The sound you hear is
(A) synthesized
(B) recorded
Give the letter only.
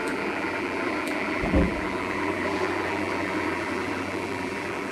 A